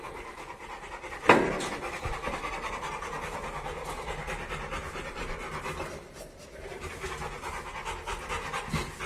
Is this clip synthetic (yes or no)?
no